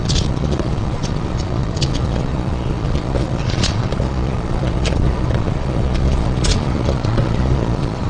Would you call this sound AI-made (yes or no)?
yes